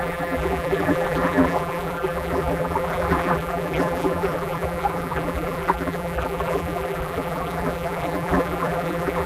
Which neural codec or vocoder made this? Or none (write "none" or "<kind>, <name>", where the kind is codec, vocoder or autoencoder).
vocoder, BigVGAN v2